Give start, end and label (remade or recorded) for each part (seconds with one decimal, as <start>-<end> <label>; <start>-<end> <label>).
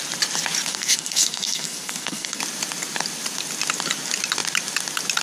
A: 0.0-0.7 recorded; 0.7-2.4 remade; 2.4-5.2 recorded